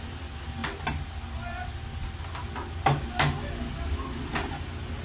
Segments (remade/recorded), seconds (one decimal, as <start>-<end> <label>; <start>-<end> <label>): 0.0-5.0 recorded